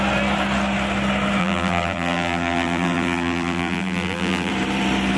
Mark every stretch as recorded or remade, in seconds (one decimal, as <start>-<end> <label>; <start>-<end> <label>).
0.0-1.4 recorded; 1.4-4.5 remade; 4.5-5.2 recorded